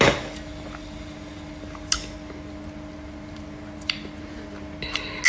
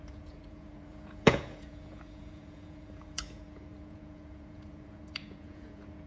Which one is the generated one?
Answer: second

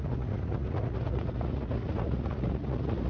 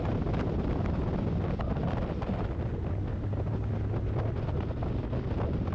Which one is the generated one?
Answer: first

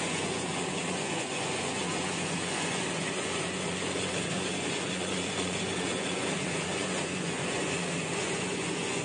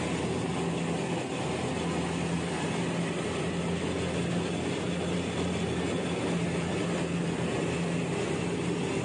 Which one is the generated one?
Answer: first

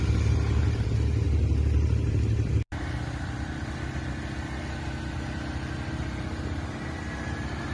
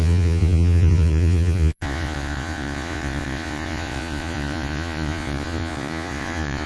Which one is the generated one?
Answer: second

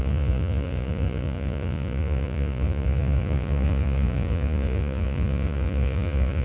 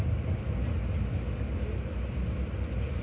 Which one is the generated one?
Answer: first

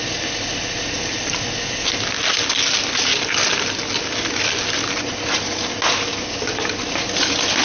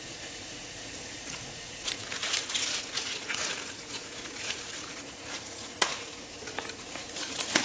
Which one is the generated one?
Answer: second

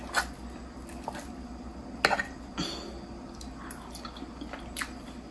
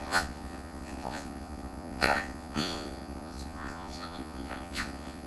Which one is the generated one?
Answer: second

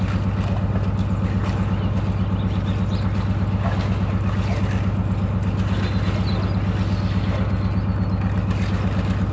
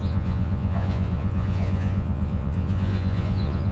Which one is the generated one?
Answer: second